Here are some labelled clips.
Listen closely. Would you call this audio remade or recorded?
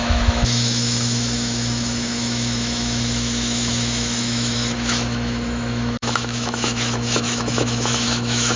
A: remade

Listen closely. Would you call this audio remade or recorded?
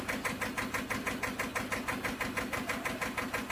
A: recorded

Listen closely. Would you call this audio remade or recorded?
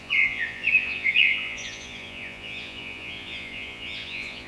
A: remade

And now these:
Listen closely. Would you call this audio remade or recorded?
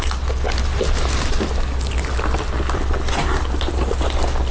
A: recorded